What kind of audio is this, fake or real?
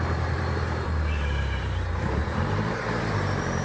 fake